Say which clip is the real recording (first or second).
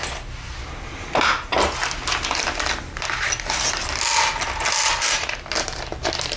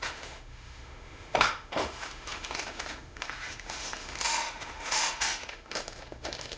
first